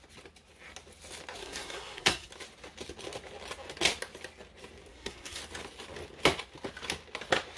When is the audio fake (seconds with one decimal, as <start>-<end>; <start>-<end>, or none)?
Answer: 1.4-2.3; 4.9-5.4

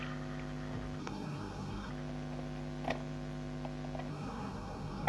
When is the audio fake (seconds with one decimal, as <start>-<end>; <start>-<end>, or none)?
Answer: 1.0-1.9; 4.1-5.1